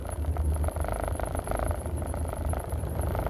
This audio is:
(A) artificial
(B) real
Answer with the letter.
B